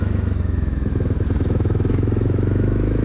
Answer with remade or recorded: remade